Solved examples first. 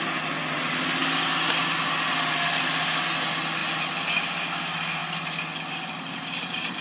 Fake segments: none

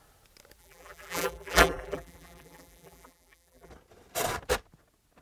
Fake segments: 0.6-3.7 (vocoder, BigVGAN v2)

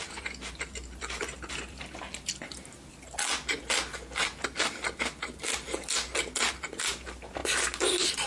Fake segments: none

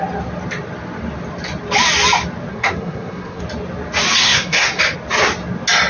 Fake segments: 2.5-3.4 (codec, SNAC); 4.2-4.8

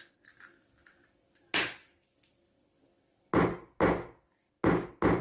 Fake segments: none